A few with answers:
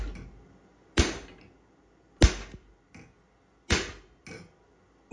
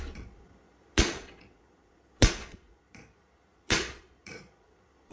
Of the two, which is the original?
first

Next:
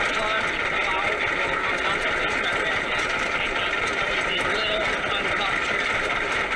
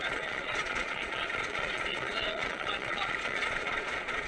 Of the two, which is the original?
first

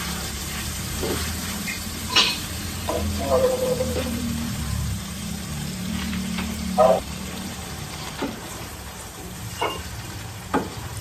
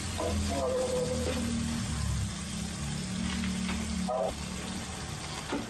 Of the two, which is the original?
second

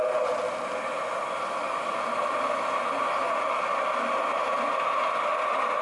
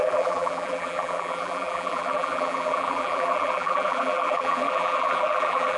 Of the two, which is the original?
first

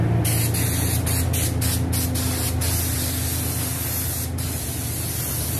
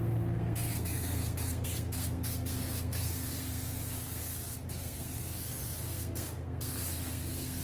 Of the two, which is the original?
first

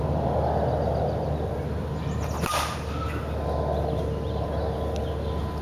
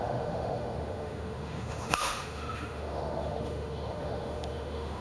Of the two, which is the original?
first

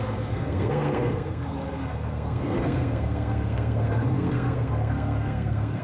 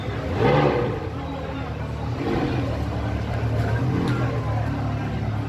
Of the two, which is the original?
second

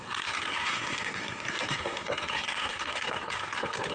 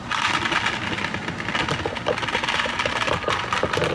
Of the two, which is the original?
second